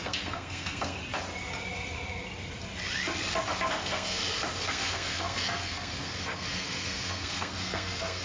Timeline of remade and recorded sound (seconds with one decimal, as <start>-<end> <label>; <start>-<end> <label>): 0.0-1.0 remade; 1.0-3.6 recorded; 3.6-4.2 remade; 4.2-4.7 recorded; 4.7-8.2 remade